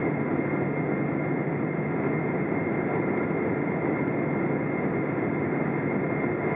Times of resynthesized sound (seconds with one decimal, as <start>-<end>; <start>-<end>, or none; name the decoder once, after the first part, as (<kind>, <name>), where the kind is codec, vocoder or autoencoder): none